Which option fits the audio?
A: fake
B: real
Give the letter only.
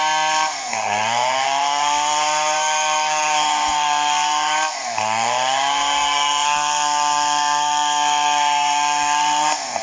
A